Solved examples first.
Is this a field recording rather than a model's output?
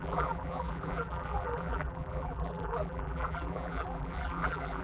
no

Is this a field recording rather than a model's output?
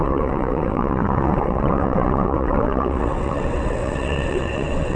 no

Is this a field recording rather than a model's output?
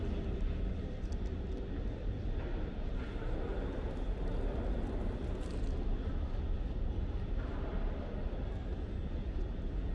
yes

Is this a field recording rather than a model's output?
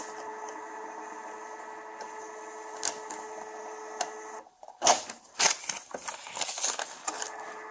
yes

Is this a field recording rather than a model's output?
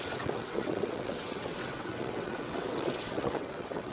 no